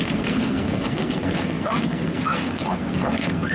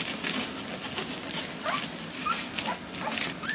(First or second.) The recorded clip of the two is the second